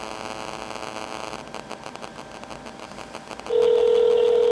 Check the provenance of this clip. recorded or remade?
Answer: recorded